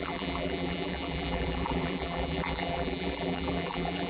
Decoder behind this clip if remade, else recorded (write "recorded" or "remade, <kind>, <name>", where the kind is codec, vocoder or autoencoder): remade, vocoder, BigVGAN v2